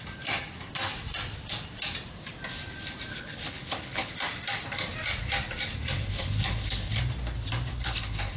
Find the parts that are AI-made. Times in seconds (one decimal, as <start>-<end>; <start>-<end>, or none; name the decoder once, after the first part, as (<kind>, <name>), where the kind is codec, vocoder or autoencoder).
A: 3.1-4.1 (codec, HILCodec); 6.1-7.0; 7.7-8.4